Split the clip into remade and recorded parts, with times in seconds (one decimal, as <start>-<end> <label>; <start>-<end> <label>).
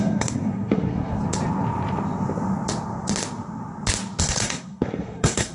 0.0-1.2 remade; 1.2-4.2 recorded; 4.2-5.5 remade